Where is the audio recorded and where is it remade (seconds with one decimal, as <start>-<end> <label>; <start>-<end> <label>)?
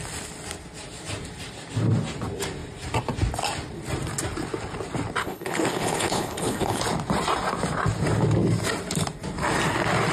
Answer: 0.0-5.2 recorded; 5.2-6.8 remade; 6.8-10.1 recorded